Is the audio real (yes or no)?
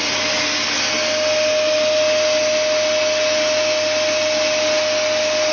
yes